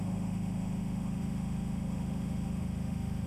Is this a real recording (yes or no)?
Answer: no